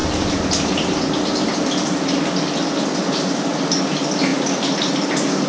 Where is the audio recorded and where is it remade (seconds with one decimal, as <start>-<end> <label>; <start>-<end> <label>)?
0.0-5.5 recorded